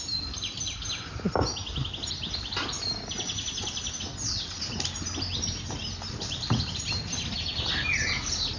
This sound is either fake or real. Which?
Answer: real